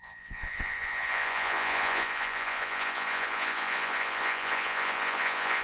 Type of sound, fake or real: fake